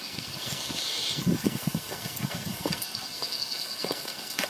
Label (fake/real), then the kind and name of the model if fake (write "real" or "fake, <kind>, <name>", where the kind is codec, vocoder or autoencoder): fake, codec, SNAC